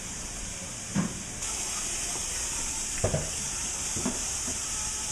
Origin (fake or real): fake